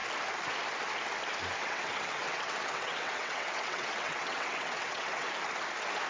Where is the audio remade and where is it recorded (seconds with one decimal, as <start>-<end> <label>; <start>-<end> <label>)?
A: 0.0-1.6 recorded; 1.6-5.3 remade; 5.3-6.1 recorded